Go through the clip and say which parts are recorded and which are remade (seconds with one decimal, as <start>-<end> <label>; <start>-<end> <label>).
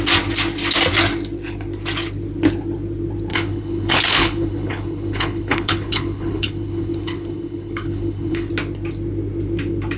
0.0-3.3 recorded; 3.3-8.5 remade; 8.5-10.0 recorded